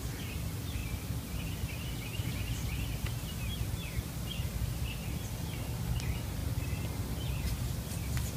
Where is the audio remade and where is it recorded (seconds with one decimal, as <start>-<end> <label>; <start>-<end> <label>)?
0.0-8.4 recorded